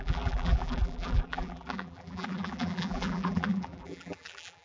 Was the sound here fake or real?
fake